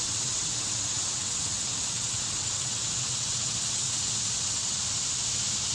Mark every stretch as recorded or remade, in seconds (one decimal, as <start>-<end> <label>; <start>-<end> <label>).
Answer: 0.0-4.8 remade; 4.8-5.7 recorded